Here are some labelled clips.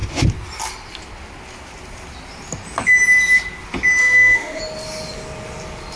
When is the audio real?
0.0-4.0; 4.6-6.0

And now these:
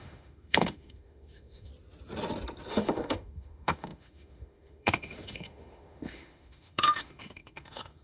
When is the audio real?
1.7-2.7

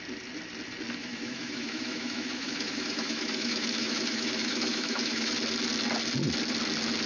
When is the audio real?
0.0-1.0; 5.3-7.1

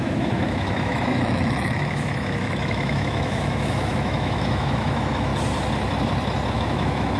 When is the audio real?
5.3-6.5

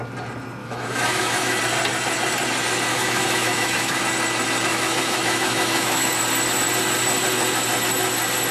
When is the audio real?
0.0-0.6; 1.6-2.9; 4.0-4.7; 6.1-8.5

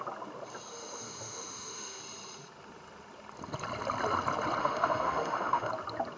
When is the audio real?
0.0-0.7; 2.0-4.6; 5.7-6.2

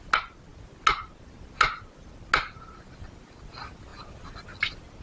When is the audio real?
0.0-5.0

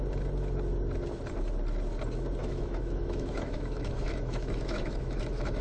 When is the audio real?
0.0-2.4